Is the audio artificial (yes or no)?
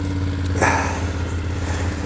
no